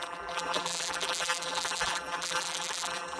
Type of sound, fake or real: fake